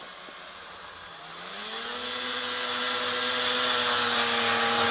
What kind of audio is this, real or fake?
real